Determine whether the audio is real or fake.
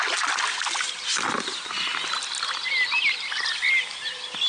real